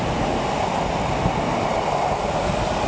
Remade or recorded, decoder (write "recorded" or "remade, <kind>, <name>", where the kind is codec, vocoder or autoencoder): recorded